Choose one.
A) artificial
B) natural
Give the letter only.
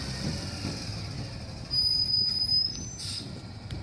B